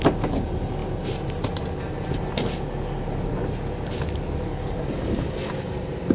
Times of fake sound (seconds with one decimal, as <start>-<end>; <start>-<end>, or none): 4.5-5.5